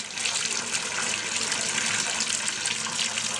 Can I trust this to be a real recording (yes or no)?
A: yes